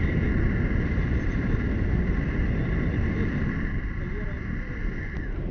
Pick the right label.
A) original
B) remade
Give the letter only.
A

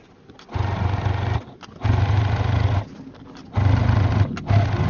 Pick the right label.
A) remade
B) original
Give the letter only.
B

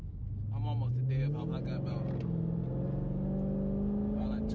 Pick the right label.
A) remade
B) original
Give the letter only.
B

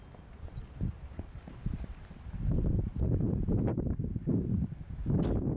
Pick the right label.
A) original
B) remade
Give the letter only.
A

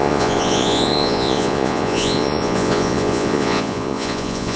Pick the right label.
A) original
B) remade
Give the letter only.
B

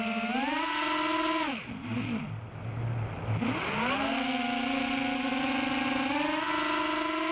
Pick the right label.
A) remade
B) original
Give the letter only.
B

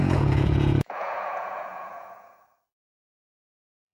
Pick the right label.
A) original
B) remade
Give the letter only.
B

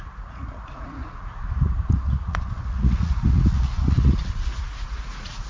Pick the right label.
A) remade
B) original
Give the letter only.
A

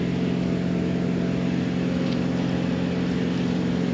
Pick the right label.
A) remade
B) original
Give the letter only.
B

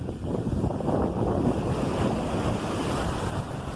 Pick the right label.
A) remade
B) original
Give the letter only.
B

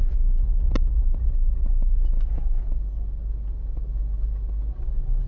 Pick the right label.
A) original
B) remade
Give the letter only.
A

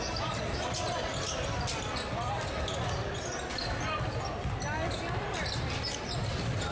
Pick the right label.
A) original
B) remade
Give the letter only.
A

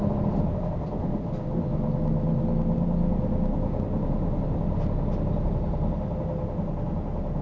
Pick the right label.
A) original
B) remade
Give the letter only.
A